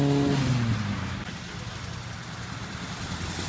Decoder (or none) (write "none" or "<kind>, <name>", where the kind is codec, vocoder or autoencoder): none